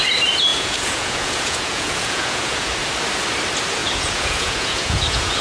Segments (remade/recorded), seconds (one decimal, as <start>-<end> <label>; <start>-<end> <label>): 0.0-0.5 recorded; 0.5-2.7 remade; 2.7-3.8 recorded; 3.8-5.4 remade